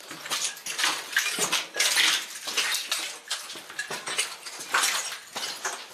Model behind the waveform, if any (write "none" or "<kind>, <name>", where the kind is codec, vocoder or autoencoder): none